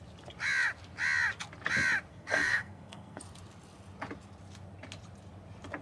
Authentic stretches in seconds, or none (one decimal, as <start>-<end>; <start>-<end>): 0.0-2.1; 3.2-5.8